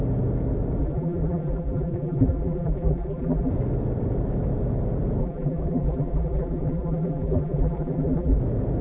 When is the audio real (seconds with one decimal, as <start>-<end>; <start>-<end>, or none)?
0.0-0.8; 3.5-5.2; 8.4-8.8